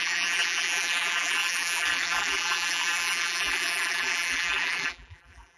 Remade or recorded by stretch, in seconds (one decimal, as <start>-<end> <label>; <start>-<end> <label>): 0.0-5.6 remade